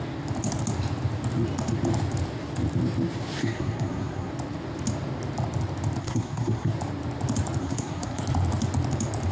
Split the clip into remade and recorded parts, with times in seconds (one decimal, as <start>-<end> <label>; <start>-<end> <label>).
0.0-3.4 recorded; 3.4-4.3 remade; 4.3-6.0 recorded; 6.0-6.7 remade; 6.7-7.6 recorded; 7.6-8.2 remade; 8.2-9.3 recorded